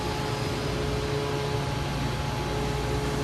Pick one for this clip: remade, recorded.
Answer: recorded